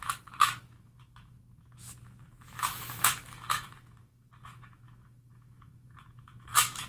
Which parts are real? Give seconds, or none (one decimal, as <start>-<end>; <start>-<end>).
none